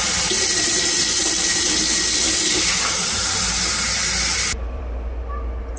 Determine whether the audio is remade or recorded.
remade